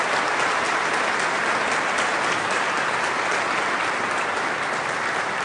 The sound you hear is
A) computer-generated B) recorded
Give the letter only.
B